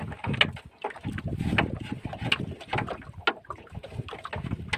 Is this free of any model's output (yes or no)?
yes